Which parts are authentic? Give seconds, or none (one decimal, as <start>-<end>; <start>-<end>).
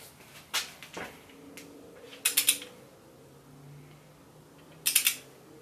0.0-5.6